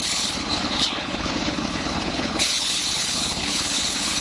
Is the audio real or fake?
fake